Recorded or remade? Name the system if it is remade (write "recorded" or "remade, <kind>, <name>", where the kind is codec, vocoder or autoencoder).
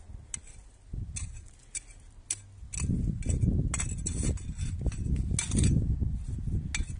recorded